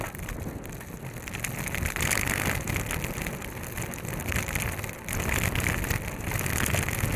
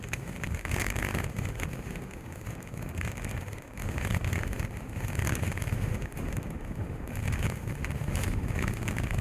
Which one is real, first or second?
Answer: first